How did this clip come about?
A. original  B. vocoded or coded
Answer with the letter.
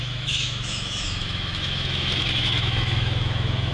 B